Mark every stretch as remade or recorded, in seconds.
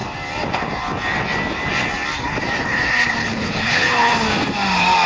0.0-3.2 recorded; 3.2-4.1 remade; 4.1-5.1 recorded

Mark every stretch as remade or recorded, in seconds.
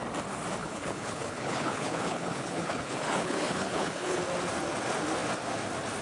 0.0-0.6 recorded; 0.6-4.2 remade; 4.2-6.0 recorded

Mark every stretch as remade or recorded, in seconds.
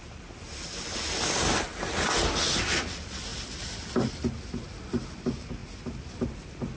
0.0-6.8 recorded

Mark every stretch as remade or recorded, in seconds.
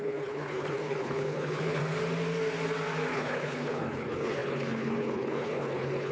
0.0-1.8 remade; 1.8-3.1 recorded; 3.1-6.1 remade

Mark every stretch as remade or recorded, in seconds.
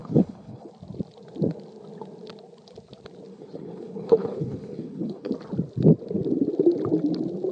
0.0-0.7 remade; 0.7-3.3 recorded; 3.3-5.3 remade; 5.3-7.5 recorded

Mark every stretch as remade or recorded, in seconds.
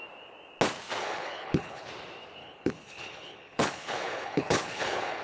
0.0-1.0 recorded; 1.0-1.9 remade; 1.9-2.4 recorded; 2.4-5.2 remade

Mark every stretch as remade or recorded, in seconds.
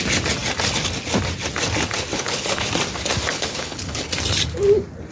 0.0-2.1 recorded; 2.1-2.7 remade; 2.7-3.3 recorded; 3.3-4.0 remade; 4.0-5.1 recorded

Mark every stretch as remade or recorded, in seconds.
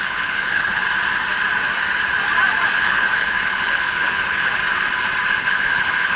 0.0-0.8 remade; 0.8-2.8 recorded; 2.8-4.6 remade; 4.6-5.4 recorded; 5.4-6.2 remade